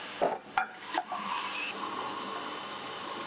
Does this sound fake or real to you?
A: real